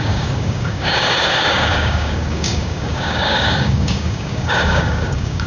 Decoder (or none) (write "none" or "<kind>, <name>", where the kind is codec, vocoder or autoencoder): codec, DAC